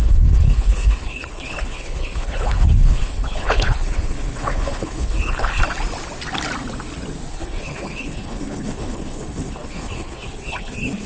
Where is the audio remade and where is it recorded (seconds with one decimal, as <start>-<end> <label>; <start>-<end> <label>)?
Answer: 0.0-5.6 remade; 5.6-7.3 recorded; 7.3-11.1 remade